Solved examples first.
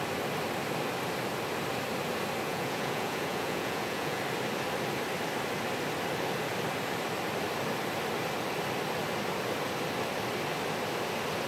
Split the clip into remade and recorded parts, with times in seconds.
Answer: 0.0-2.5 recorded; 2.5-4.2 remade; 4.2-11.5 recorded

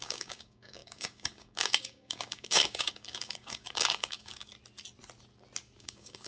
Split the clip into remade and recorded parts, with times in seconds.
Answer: 0.0-4.5 remade; 4.5-5.8 recorded; 5.8-6.3 remade

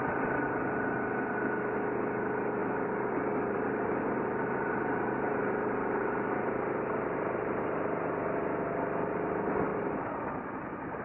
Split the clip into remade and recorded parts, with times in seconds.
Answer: 0.0-2.6 recorded; 2.6-7.6 remade; 7.6-9.7 recorded; 9.7-10.4 remade; 10.4-11.0 recorded

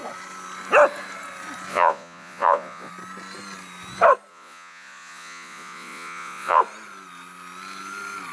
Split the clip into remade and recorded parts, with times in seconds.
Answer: 0.0-1.7 recorded; 1.7-2.9 remade; 2.9-4.3 recorded; 4.3-6.6 remade; 6.6-8.3 recorded

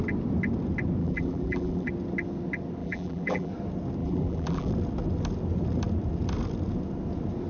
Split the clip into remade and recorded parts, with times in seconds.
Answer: 0.0-1.0 recorded; 1.0-1.9 remade; 1.9-2.8 recorded; 2.8-3.5 remade; 3.5-4.0 recorded; 4.0-4.7 remade; 4.7-7.5 recorded